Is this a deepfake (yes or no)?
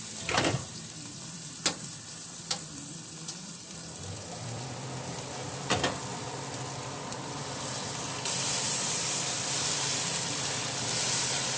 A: yes